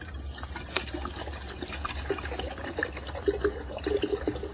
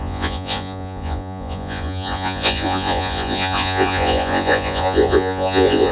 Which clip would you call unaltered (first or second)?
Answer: first